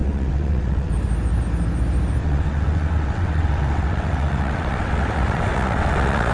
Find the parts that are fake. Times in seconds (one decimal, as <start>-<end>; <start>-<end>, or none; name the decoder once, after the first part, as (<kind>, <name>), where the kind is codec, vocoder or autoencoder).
0.0-0.9 (vocoder, WaveNeXt); 2.2-6.3